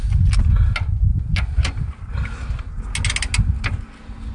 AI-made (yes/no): no